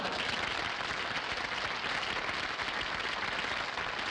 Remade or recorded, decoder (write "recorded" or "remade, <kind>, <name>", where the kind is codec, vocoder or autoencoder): recorded